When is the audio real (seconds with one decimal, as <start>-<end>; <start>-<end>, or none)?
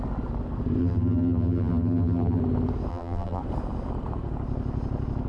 0.0-0.8; 2.4-2.9; 3.4-5.3